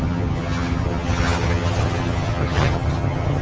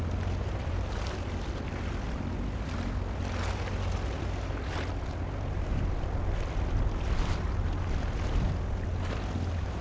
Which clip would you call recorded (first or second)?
second